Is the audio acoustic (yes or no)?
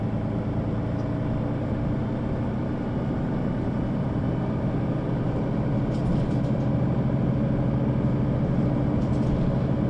yes